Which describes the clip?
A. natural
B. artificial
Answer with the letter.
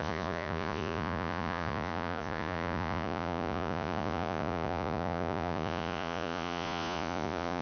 B